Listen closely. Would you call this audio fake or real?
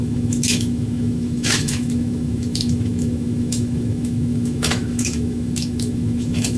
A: fake